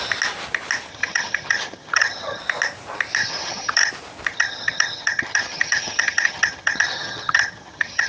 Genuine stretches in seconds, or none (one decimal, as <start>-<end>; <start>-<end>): 0.0-0.9; 2.4-3.2; 3.9-4.3